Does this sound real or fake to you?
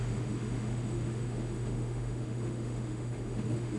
fake